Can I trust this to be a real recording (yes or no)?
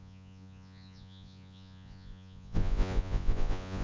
no